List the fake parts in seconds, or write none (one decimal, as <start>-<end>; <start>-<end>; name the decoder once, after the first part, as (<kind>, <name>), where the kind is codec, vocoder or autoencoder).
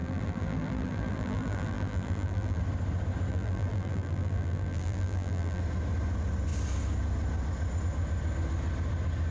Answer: 0.0-2.6 (vocoder, BigVGAN v2); 3.3-5.6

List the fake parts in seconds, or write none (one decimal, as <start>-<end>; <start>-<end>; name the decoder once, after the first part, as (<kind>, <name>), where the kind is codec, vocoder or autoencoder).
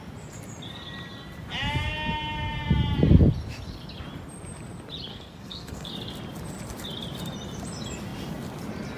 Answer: 5.1-5.9 (codec, SNAC)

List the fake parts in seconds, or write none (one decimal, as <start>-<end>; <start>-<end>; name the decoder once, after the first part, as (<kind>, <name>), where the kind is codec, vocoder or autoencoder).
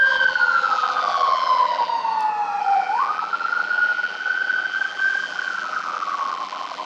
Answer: 0.0-1.9 (vocoder, BigVGAN v2); 2.6-6.9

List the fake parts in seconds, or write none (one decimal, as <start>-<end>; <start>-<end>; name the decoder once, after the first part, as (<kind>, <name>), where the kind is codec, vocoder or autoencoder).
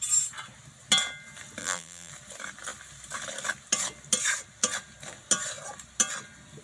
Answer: 1.6-2.1 (vocoder, BigVGAN v2)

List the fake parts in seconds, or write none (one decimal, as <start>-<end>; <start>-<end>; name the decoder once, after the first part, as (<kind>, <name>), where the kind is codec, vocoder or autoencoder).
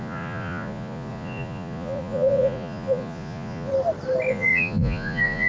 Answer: 0.0-3.7 (vocoder, Vocos); 4.3-5.5